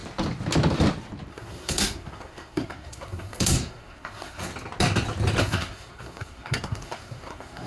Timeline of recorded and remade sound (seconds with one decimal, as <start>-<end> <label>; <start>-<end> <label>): 0.0-1.3 recorded; 1.3-4.5 remade; 4.5-5.4 recorded; 5.4-7.7 remade